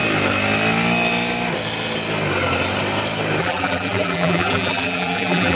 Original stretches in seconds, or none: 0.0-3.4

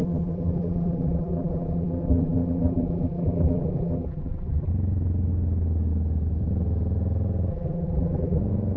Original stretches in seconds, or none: 4.7-7.5; 8.4-8.8

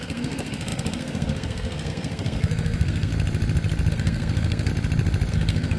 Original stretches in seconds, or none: 3.1-3.9; 4.7-5.3